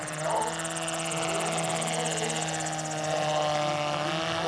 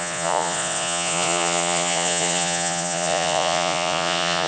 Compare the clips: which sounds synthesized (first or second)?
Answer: second